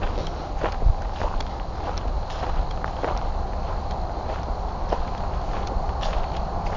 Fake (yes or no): no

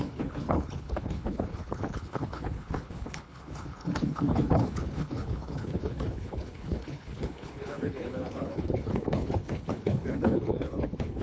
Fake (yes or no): yes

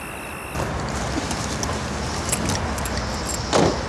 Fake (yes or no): no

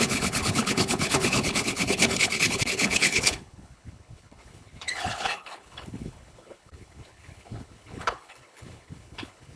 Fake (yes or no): yes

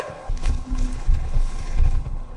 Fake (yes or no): yes